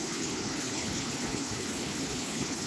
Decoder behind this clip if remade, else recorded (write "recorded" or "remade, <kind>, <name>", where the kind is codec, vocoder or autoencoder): remade, codec, HILCodec